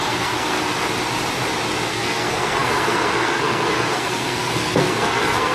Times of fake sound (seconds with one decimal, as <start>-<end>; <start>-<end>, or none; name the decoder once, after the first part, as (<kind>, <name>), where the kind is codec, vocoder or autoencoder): 0.0-0.7 (codec, SNAC); 1.9-5.5